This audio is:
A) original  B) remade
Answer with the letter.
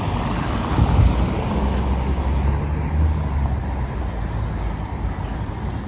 A